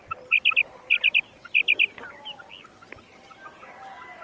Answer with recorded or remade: recorded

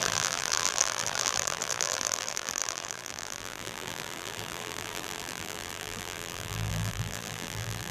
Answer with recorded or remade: remade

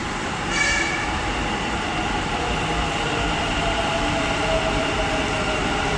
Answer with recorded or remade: remade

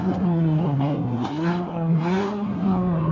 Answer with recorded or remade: remade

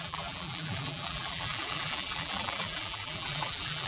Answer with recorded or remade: remade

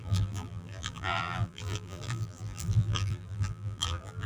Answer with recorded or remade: remade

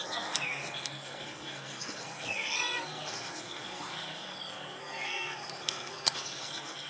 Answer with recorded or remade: remade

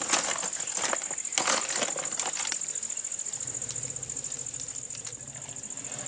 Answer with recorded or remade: recorded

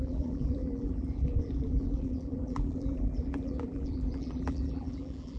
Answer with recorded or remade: remade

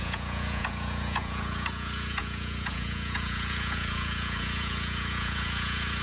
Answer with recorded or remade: remade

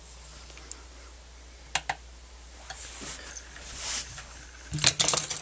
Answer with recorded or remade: recorded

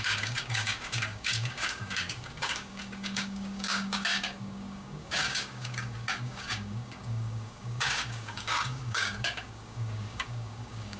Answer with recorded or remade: remade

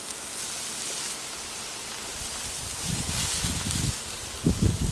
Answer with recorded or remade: recorded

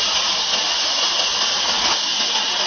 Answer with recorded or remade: recorded